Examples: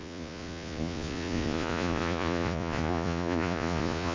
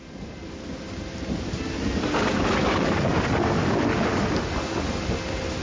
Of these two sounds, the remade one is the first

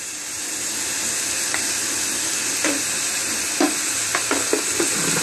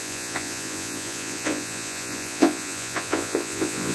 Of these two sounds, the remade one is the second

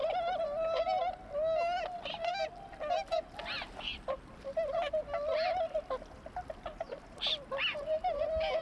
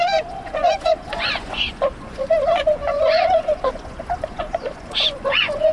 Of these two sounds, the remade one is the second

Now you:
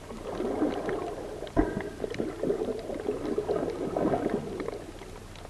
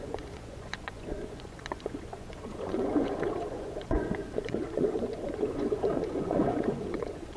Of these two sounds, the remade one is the second